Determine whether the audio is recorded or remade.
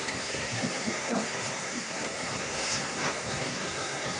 remade